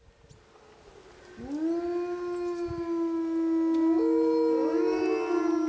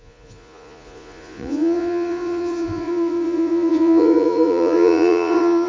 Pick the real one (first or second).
first